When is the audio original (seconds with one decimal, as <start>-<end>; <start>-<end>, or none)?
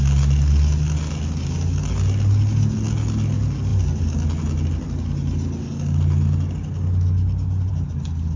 0.0-8.4